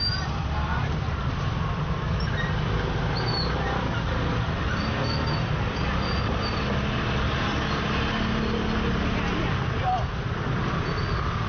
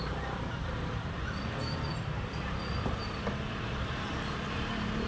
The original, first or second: first